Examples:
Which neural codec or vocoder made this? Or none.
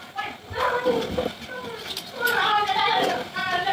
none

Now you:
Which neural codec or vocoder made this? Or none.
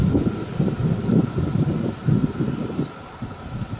none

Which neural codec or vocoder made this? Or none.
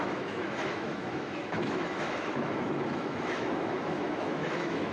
autoencoder, DAC-VAE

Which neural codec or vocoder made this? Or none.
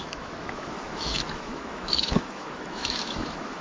autoencoder, DAC-VAE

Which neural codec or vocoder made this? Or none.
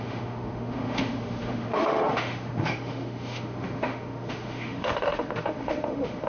autoencoder, DAC-VAE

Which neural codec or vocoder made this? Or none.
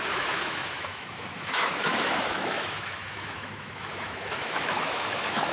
autoencoder, DAC-VAE